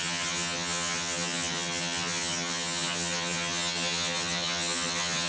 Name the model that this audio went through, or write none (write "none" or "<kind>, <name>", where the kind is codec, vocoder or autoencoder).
vocoder, HiFi-GAN